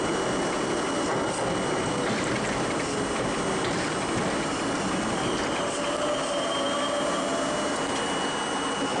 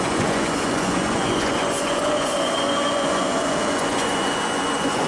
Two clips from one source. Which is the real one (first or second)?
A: first